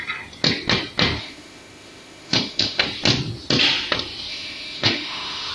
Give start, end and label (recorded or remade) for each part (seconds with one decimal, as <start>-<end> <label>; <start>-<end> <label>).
0.0-1.2 recorded; 1.2-2.8 remade; 2.8-4.3 recorded; 4.3-5.5 remade